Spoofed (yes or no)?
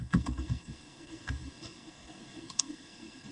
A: yes